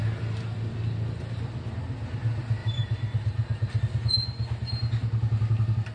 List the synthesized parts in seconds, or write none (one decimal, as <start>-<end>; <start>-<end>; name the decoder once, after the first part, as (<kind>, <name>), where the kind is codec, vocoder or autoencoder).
2.6-3.8 (vocoder, BigVGAN v2)